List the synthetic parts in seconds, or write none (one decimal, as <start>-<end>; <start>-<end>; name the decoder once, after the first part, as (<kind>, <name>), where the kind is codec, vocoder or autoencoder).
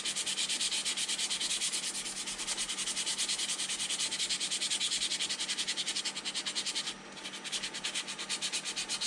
none